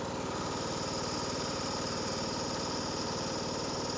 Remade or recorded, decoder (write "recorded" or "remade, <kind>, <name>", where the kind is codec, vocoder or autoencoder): recorded